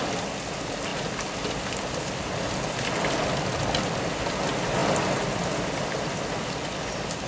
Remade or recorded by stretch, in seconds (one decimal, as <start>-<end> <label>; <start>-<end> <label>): 0.0-4.8 recorded; 4.8-6.3 remade; 6.3-7.3 recorded